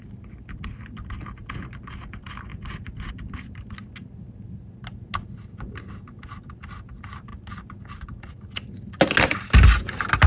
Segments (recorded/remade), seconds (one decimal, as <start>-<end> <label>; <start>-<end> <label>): 0.0-10.3 recorded